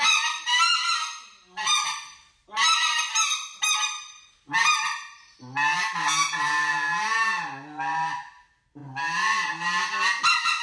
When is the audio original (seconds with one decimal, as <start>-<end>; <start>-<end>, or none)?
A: 0.0-10.6